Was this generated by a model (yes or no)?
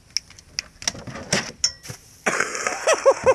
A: no